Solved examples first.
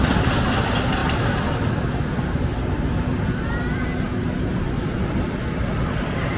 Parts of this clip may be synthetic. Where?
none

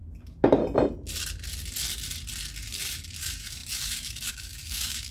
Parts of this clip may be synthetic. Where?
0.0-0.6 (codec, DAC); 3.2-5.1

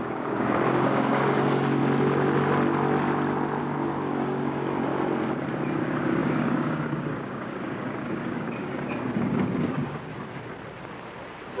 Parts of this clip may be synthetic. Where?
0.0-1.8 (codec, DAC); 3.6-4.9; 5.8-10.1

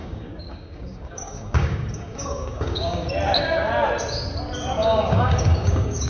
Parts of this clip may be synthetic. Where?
0.0-3.1 (codec, DAC); 4.8-6.1